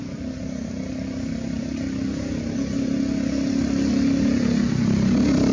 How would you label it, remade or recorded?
recorded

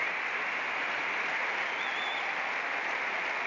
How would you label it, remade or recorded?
recorded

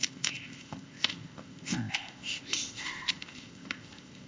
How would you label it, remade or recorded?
remade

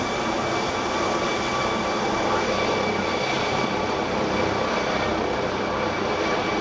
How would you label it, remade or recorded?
recorded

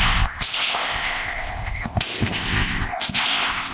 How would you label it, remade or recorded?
remade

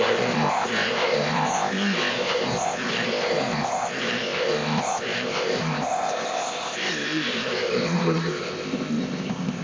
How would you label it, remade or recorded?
remade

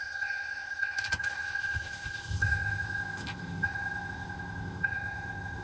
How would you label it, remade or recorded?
remade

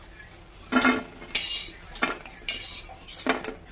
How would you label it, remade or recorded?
recorded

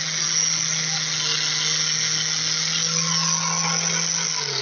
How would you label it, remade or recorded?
recorded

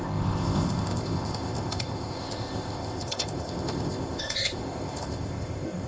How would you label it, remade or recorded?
remade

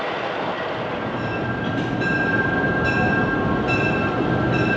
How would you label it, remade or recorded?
recorded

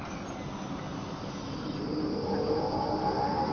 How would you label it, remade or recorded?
recorded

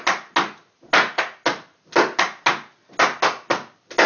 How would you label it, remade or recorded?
recorded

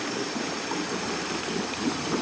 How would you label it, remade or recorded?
recorded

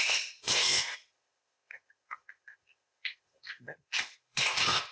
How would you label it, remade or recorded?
remade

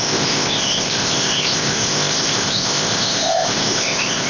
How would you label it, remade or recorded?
remade